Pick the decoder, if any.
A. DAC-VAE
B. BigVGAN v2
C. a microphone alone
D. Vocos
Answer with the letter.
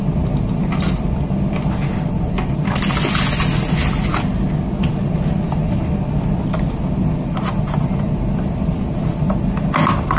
C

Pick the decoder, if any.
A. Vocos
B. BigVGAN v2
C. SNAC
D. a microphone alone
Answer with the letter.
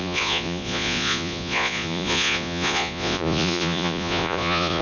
A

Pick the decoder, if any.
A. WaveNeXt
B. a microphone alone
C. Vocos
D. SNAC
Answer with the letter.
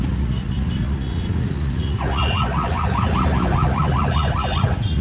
C